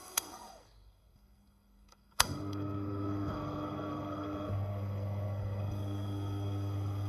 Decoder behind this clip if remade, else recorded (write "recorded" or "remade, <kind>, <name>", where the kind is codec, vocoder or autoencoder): remade, codec, SNAC